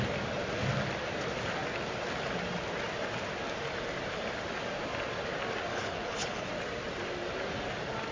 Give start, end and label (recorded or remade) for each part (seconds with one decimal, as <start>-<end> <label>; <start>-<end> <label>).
0.0-5.7 recorded; 5.7-6.5 remade; 6.5-8.1 recorded